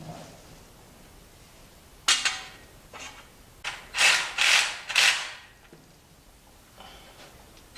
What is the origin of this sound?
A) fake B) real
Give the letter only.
B